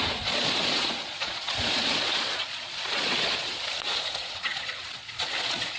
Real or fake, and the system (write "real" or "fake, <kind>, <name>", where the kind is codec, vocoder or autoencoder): fake, vocoder, Vocos